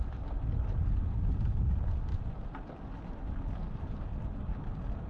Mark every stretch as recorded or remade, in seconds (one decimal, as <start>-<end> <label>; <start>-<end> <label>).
0.0-5.1 recorded